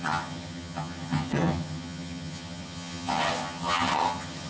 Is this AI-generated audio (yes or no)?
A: yes